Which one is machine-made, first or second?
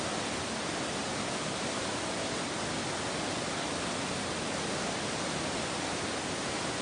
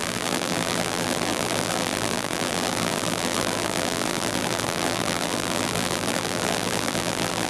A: second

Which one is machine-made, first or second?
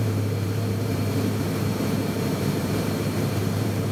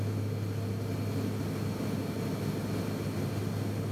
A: first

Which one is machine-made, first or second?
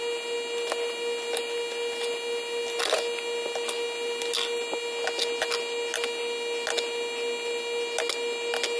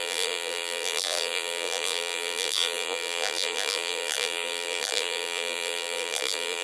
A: second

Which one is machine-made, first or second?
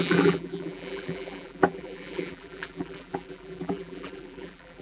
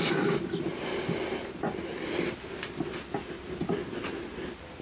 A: first